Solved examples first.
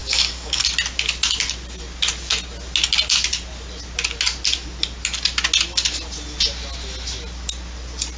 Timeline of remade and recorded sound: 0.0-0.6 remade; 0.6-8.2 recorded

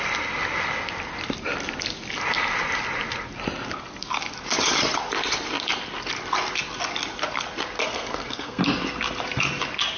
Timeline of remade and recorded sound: 0.0-7.8 recorded; 7.8-8.6 remade; 8.6-10.0 recorded

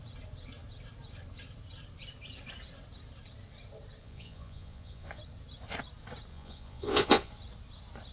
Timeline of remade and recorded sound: 0.0-4.0 recorded; 4.0-5.2 remade; 5.2-6.3 recorded; 6.3-7.3 remade; 7.3-8.1 recorded

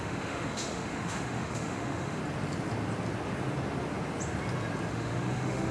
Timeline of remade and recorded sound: 0.0-2.2 remade; 2.2-4.9 recorded; 4.9-5.7 remade